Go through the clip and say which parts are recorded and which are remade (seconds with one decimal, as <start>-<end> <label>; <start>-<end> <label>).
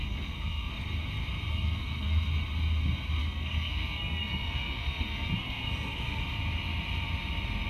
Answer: 0.0-0.7 remade; 0.7-1.5 recorded; 1.5-2.3 remade; 2.3-3.2 recorded; 3.2-6.2 remade; 6.2-7.7 recorded